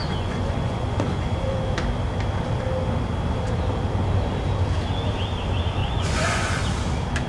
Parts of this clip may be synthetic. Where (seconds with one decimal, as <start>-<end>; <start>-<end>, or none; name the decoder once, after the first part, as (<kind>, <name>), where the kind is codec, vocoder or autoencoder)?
0.0-1.6 (vocoder, Vocos); 5.8-6.6